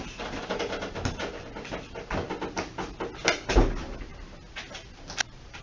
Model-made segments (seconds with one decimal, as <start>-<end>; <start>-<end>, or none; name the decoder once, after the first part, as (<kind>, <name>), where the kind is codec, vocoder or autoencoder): none